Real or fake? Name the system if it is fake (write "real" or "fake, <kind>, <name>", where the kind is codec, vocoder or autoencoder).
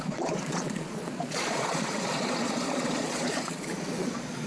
fake, vocoder, Vocos